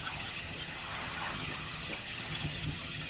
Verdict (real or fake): fake